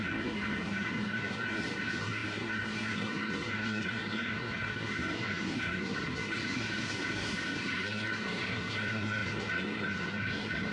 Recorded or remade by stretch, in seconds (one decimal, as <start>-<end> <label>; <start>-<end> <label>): 0.0-10.7 remade